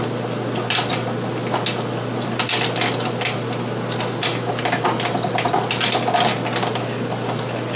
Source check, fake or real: real